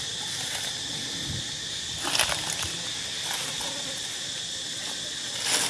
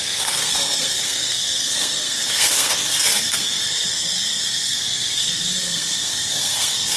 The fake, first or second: second